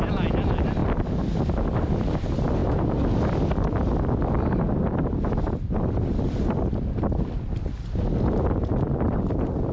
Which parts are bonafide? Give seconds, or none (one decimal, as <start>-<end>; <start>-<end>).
0.0-9.7